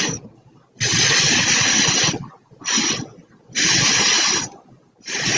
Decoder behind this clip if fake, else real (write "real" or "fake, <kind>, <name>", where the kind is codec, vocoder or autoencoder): real